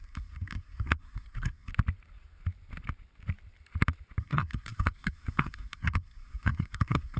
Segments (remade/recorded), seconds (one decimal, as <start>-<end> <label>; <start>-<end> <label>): 0.0-1.7 remade; 1.7-4.2 recorded; 4.2-7.2 remade